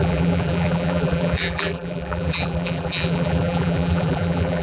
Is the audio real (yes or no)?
no